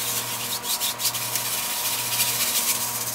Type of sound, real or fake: real